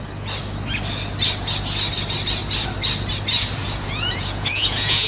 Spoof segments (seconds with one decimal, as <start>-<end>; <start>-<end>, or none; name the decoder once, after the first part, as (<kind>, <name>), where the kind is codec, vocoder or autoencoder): 3.6-5.1 (vocoder, Vocos)